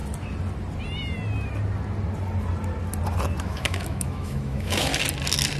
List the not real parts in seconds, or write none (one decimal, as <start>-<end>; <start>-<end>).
3.4-4.9